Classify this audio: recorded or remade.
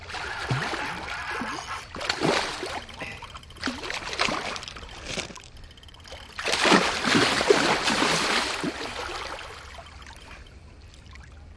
remade